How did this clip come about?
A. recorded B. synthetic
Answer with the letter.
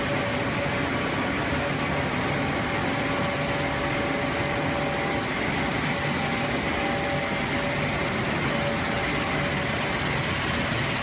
A